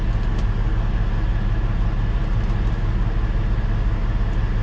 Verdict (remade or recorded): recorded